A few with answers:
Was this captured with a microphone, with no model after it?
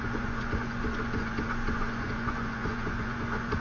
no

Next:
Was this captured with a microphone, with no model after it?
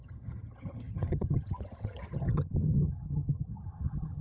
no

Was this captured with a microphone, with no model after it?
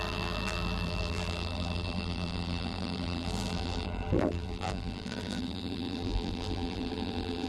no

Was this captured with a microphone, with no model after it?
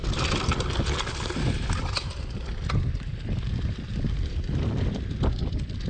yes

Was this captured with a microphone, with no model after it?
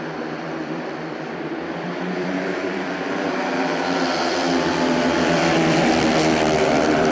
no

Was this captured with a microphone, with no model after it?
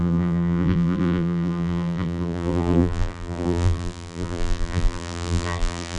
no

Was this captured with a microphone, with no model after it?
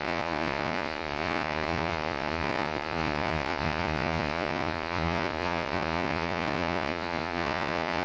no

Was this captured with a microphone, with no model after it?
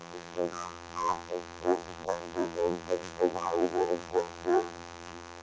no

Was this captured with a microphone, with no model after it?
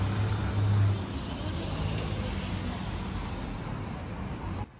yes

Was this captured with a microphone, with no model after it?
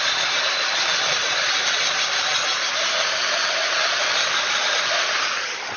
yes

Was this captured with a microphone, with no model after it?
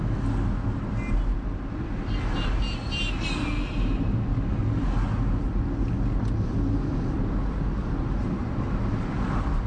yes